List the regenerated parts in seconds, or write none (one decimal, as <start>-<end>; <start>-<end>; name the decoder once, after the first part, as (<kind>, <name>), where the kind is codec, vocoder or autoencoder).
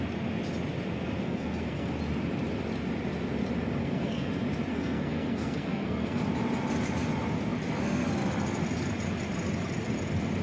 1.2-1.9 (codec, SNAC); 3.8-4.3; 4.7-6.2